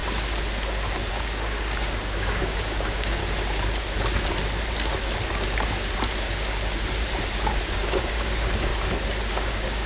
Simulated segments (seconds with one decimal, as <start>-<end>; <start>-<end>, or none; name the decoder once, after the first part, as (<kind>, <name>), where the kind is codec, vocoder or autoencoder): 1.1-3.2 (codec, DAC); 7.6-8.7; 9.3-9.9